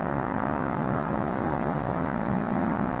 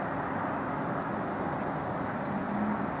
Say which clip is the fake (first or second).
first